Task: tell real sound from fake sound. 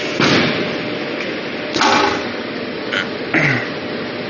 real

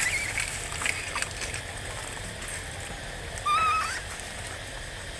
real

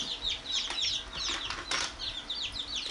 real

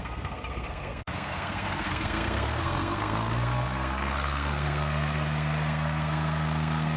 fake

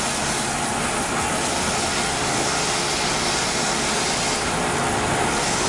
real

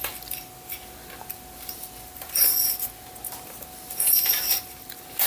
real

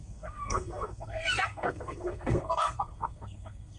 fake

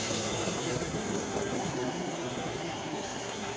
fake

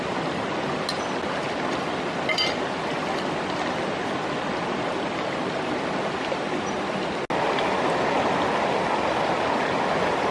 real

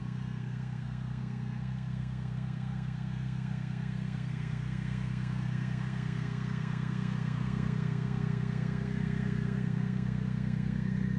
fake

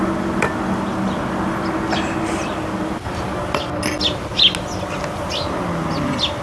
real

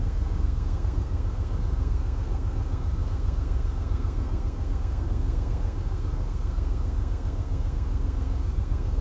fake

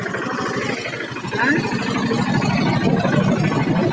real